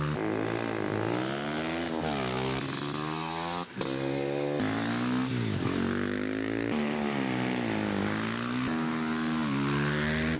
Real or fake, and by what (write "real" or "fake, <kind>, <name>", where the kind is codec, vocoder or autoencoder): real